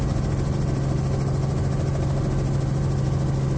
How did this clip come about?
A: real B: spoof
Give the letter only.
A